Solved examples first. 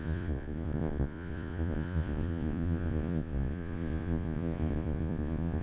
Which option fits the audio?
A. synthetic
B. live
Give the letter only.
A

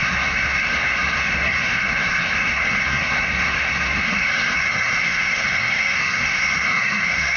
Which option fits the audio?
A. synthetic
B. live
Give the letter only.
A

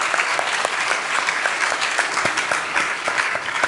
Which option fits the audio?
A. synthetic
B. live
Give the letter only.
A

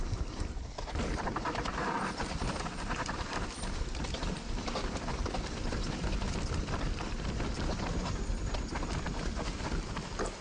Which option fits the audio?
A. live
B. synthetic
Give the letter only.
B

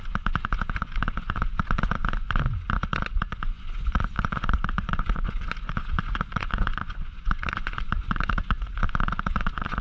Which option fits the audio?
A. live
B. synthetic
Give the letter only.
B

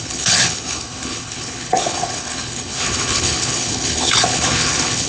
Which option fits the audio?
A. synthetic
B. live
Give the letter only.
A